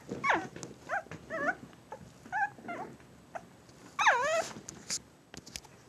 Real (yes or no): yes